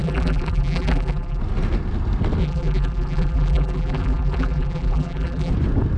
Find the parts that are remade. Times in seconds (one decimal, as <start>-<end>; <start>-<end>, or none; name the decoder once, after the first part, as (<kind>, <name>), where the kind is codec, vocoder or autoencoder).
0.0-1.4 (vocoder, BigVGAN v2); 2.4-5.5